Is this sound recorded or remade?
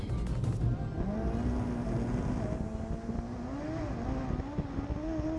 recorded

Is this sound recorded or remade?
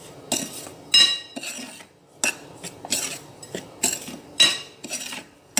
recorded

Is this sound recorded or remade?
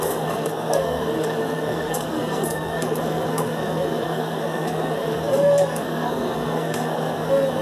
remade